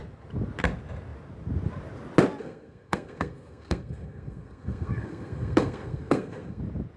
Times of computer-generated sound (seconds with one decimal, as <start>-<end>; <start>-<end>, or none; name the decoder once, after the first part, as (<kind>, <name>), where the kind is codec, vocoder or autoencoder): 2.4-6.6 (codec, SNAC)